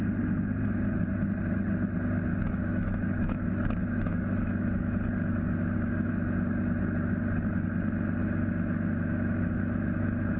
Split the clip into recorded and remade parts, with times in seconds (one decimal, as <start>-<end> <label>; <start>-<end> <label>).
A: 0.0-2.3 recorded; 2.3-6.1 remade; 6.1-8.2 recorded; 8.2-10.4 remade